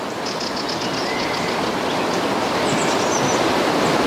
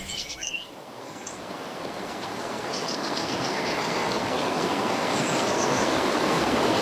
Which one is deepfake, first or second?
second